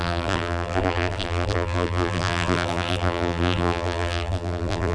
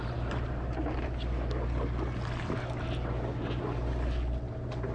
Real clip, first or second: second